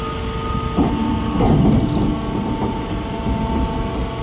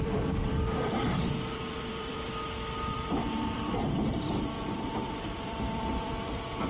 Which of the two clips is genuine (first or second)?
first